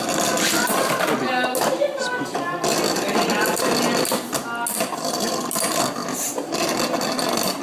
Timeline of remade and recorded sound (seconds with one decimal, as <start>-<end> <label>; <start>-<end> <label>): 0.0-7.6 recorded